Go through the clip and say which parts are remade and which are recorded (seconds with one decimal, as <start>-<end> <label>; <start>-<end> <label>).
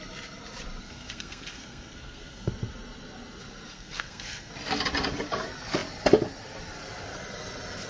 0.0-0.8 recorded; 0.8-2.5 remade; 2.5-3.7 recorded; 3.7-4.5 remade; 4.5-7.9 recorded